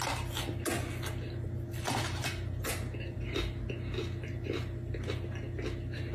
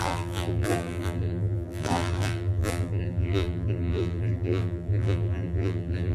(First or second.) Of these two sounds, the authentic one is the first